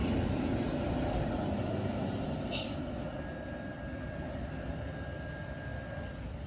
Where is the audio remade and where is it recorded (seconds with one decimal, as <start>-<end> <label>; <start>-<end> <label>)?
0.0-6.5 recorded